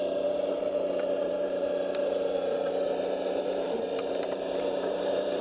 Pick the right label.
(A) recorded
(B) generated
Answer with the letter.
B